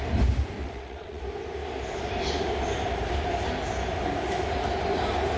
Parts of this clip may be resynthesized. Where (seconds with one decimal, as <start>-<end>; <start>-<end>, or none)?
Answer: 0.6-1.2